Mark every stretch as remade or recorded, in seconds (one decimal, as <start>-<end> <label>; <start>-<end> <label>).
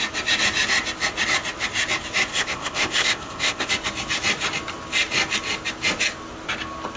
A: 0.0-2.3 recorded; 2.3-3.7 remade; 3.7-7.0 recorded